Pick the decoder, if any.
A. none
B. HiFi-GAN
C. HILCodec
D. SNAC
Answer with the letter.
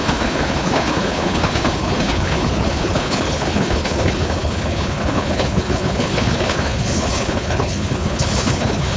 C